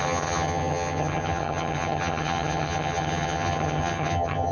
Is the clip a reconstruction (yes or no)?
yes